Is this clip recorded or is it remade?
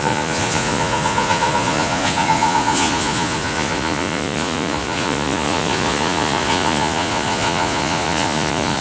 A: remade